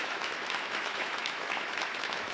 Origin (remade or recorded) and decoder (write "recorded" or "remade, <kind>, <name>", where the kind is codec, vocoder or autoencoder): remade, autoencoder, DAC-VAE